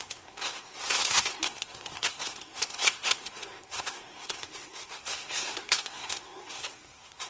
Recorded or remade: remade